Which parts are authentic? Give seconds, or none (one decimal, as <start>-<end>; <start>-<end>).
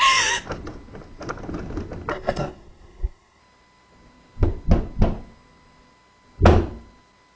0.0-2.1; 3.4-7.4